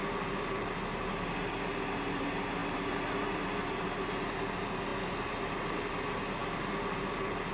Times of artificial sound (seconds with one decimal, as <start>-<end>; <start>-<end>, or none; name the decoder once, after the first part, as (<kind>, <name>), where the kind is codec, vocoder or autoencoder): none